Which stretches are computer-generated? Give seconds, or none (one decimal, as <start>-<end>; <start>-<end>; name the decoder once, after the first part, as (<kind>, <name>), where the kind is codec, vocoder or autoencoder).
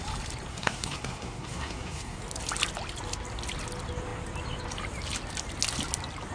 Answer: 0.5-2.2 (codec, SNAC)